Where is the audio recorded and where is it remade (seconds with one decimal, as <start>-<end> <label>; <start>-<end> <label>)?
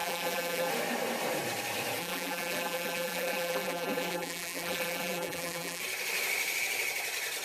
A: 0.0-0.7 remade; 0.7-2.0 recorded; 2.0-5.8 remade; 5.8-7.4 recorded